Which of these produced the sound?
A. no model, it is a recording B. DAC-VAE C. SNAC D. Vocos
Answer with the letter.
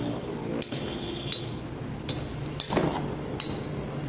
A